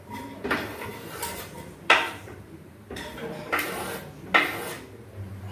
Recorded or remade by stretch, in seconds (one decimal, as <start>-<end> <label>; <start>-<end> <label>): 0.0-0.9 recorded; 0.9-3.7 remade; 3.7-5.5 recorded